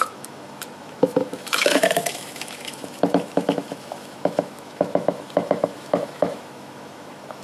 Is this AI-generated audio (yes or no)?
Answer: yes